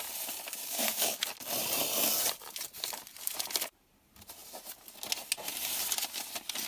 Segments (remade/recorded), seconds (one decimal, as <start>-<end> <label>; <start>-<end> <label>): 0.0-0.6 recorded; 0.6-1.2 remade; 1.2-6.7 recorded